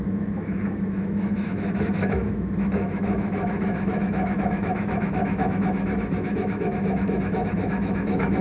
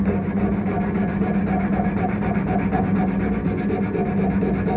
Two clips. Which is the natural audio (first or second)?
second